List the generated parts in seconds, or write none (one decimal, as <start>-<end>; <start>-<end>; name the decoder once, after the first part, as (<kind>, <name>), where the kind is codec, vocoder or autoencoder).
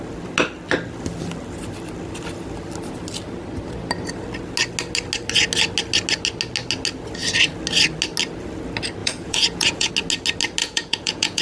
9.0-9.9 (vocoder, Vocos); 10.6-11.4